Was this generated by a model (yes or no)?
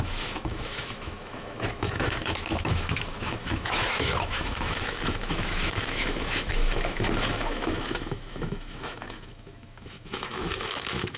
yes